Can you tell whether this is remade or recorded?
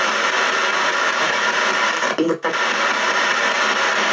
recorded